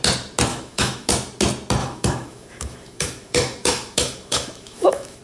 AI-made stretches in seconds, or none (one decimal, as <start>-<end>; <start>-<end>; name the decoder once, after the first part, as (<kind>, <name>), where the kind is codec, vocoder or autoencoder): 0.5-1.1 (autoencoder, DAC-VAE); 1.8-5.2